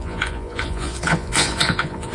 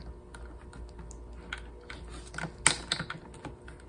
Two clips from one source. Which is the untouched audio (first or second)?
second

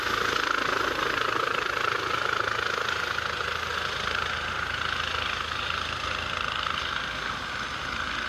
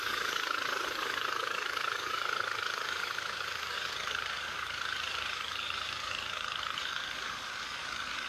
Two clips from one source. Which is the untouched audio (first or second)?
first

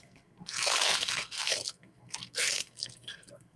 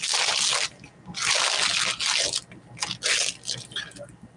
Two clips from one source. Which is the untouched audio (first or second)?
second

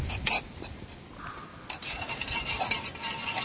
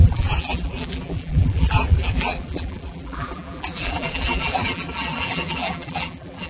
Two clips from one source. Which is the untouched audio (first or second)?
first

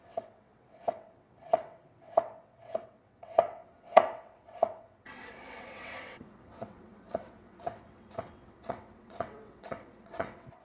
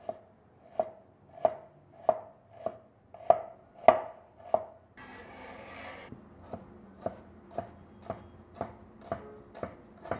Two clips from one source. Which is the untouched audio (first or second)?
second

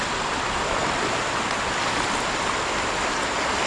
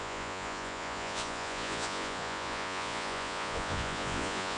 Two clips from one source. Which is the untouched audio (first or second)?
first